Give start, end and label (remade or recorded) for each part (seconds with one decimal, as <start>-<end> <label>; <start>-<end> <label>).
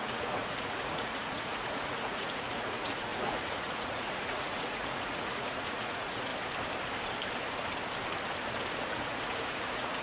0.0-6.3 remade; 6.3-8.7 recorded; 8.7-10.0 remade